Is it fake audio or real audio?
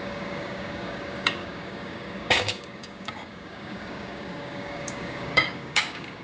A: fake